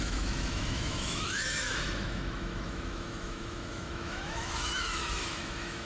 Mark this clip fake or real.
fake